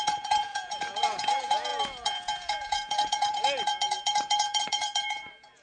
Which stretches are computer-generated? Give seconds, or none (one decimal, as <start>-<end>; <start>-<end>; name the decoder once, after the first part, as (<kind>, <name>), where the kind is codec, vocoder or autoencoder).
0.0-5.6 (vocoder, Vocos)